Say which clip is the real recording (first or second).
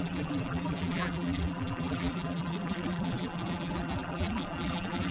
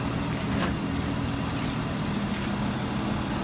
second